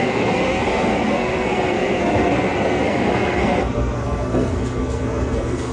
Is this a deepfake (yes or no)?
yes